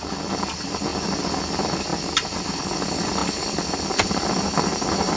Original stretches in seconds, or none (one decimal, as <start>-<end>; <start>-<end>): 0.0-5.2